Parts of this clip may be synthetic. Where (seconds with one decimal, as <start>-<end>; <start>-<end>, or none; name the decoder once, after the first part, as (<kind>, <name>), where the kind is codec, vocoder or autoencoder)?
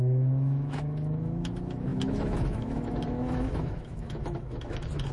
0.0-5.1 (autoencoder, DAC-VAE)